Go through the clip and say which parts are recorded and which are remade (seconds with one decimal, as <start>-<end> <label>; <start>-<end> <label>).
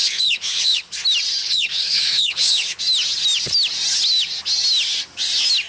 0.0-0.9 remade; 0.9-1.4 recorded; 1.4-2.8 remade; 2.8-5.7 recorded